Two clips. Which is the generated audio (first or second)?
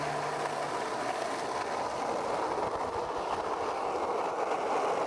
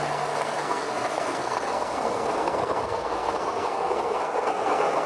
second